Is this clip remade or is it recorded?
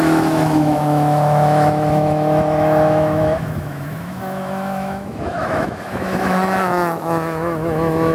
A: remade